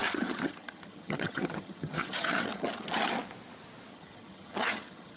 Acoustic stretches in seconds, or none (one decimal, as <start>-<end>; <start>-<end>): 3.1-3.9